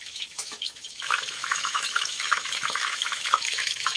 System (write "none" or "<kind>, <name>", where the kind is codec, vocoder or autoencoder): autoencoder, DAC-VAE